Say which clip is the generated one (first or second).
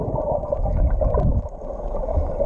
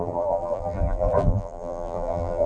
second